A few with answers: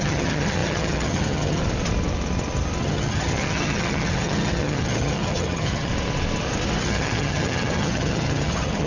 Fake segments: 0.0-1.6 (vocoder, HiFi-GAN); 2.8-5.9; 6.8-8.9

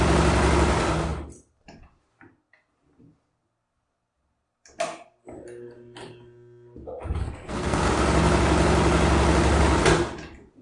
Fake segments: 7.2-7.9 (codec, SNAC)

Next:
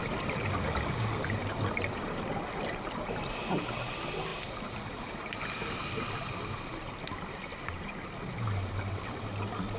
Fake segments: none

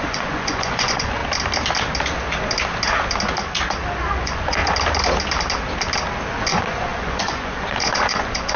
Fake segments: 0.0-1.2 (vocoder, Vocos); 4.1-4.6; 6.3-8.6

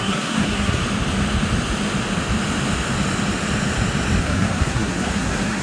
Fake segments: 0.0-0.8 (codec, SNAC); 4.2-5.6

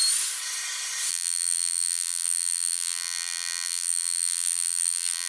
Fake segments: 1.1-5.3 (vocoder, BigVGAN v2)

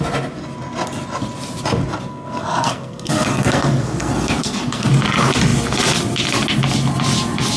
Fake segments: 2.1-4.9 (codec, SNAC)

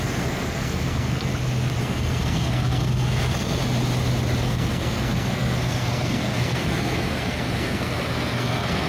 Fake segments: 0.0-1.3 (codec, SNAC); 1.8-3.6; 4.4-8.9